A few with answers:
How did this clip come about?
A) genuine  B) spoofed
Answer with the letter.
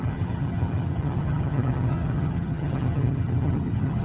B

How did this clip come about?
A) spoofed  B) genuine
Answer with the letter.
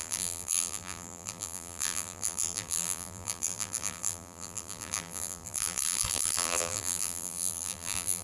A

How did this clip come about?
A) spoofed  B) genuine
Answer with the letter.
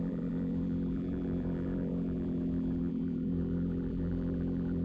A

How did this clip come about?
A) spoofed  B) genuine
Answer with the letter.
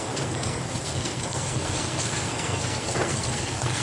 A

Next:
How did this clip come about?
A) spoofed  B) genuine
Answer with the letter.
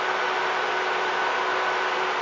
B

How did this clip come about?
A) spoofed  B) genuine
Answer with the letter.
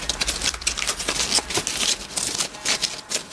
B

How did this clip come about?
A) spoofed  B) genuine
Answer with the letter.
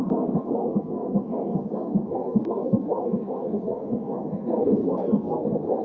A